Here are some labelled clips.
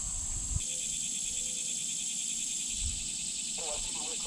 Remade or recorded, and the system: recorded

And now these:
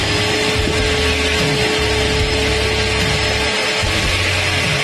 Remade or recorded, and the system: recorded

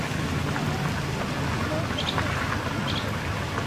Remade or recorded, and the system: recorded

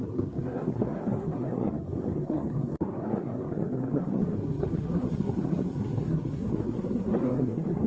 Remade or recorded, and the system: remade, codec, SNAC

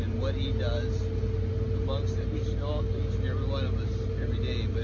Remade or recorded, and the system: recorded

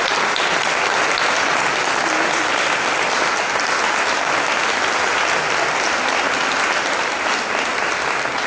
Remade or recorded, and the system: recorded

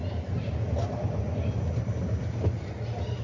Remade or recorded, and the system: recorded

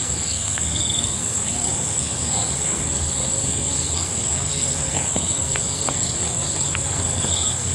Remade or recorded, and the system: remade, codec, SNAC